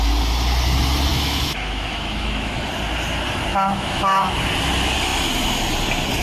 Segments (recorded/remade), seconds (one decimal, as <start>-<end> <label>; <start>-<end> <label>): 0.0-1.1 recorded; 1.1-2.7 remade; 2.7-3.5 recorded; 3.5-4.3 remade; 4.3-6.2 recorded